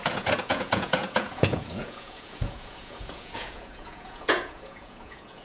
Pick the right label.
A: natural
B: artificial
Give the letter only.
B